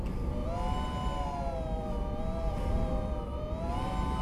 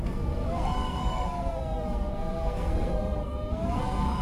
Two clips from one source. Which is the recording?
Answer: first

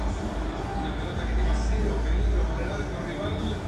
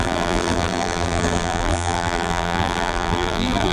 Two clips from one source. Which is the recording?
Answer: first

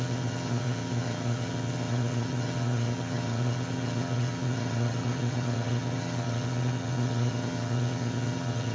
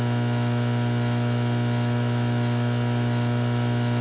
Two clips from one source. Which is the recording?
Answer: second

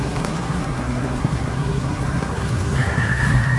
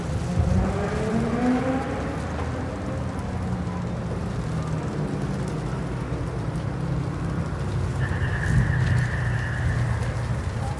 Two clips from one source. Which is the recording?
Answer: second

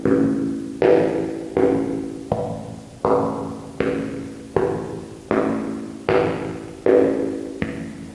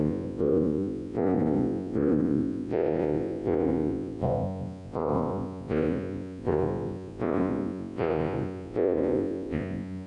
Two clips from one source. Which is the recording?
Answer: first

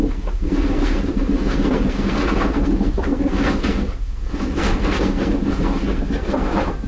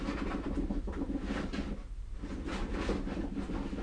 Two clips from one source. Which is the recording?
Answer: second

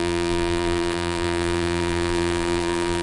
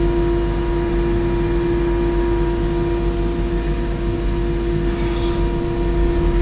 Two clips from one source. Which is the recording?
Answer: second